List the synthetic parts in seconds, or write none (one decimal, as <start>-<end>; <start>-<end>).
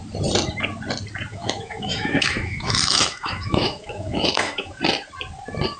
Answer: 1.3-4.8